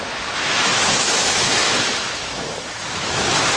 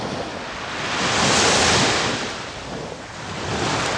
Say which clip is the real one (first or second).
second